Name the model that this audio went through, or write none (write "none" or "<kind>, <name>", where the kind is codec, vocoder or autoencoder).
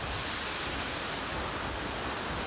none